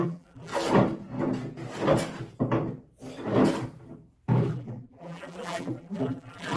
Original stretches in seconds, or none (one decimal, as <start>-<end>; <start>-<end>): 0.5-4.5